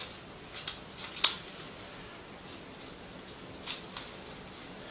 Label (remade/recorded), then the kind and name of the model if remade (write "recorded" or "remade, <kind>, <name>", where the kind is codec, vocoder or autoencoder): recorded